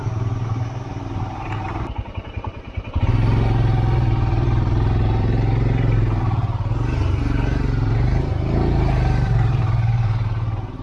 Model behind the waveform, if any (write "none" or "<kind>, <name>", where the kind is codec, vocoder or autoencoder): vocoder, BigVGAN v2